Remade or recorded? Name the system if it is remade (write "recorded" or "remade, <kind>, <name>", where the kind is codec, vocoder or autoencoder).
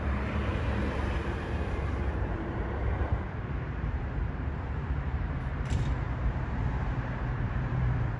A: remade, vocoder, BigVGAN v2